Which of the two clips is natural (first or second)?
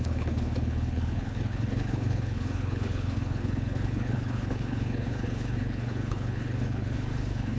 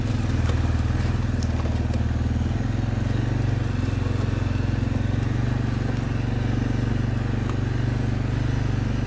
second